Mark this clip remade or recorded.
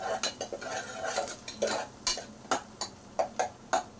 recorded